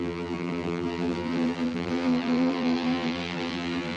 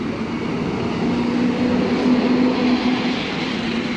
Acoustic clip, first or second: second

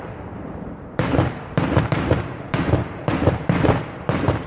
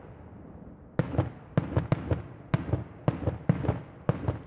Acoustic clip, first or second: second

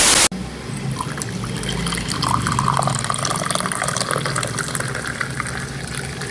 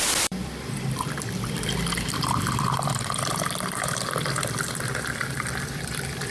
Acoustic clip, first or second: first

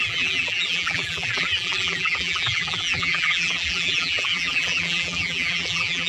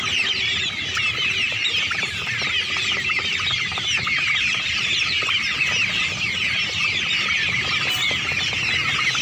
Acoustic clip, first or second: second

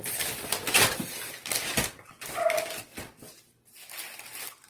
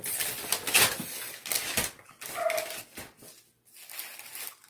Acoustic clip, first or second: second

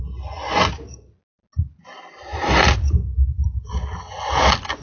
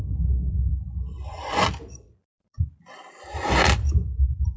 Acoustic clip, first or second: first